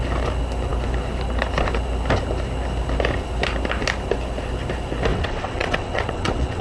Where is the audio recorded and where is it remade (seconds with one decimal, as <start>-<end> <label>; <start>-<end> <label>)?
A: 0.0-5.1 recorded; 5.1-6.6 remade